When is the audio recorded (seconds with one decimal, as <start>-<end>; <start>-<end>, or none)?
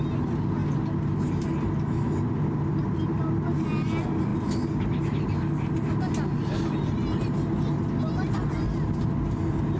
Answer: 0.0-9.8